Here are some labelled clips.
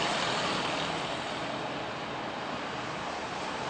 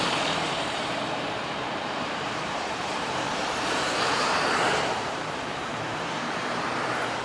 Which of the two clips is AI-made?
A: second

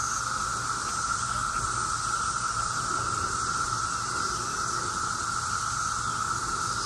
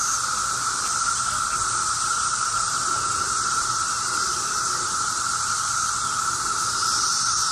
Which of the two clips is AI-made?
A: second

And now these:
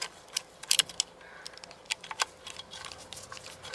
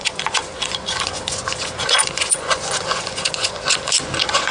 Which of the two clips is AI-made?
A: second